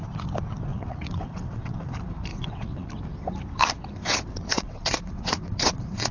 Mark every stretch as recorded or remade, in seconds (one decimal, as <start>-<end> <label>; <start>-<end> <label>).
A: 0.0-0.7 recorded; 0.7-1.8 remade; 1.8-2.3 recorded; 2.3-2.9 remade; 2.9-4.0 recorded; 4.0-6.1 remade